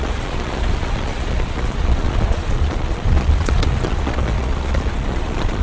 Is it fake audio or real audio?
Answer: fake